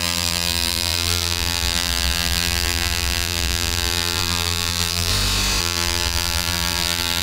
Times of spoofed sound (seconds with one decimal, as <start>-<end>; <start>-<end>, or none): 0.0-5.1; 5.6-7.2